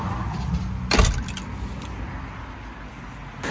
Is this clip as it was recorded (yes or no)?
yes